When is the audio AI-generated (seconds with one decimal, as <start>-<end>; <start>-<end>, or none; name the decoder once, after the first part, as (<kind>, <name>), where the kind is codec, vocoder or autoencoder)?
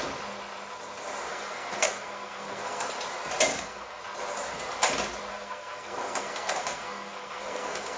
1.3-2.9 (codec, SNAC); 3.5-4.0; 5.3-8.0